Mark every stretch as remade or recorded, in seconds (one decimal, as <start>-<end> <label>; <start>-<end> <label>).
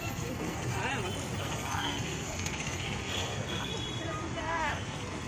0.0-0.8 remade; 0.8-1.4 recorded; 1.4-3.7 remade; 3.7-4.4 recorded; 4.4-5.3 remade